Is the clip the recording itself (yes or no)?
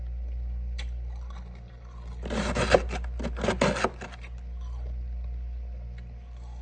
yes